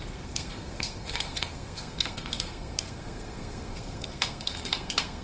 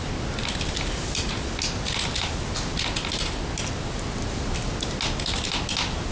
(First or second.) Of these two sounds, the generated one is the first